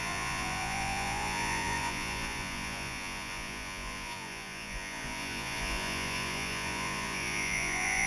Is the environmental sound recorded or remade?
remade